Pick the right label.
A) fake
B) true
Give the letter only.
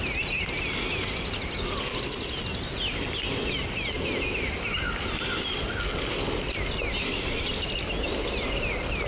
B